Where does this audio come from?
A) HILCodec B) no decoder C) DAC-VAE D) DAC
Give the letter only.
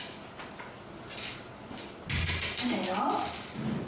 B